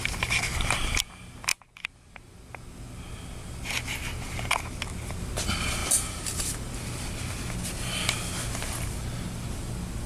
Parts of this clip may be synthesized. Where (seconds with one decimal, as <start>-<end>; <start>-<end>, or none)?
none

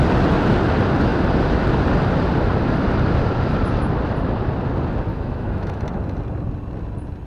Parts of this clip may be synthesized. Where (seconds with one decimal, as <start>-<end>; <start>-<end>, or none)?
5.1-5.8

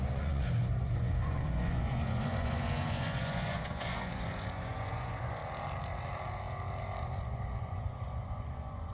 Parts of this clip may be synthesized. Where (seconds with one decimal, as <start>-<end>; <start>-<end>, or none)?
0.0-5.4; 7.0-8.9

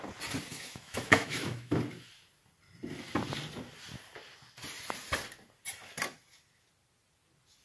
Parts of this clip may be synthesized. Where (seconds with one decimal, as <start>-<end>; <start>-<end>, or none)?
0.5-1.8